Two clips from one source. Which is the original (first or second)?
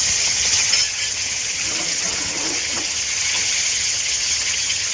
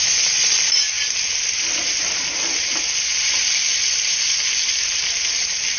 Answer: second